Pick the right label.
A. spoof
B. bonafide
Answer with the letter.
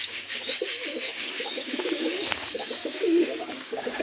A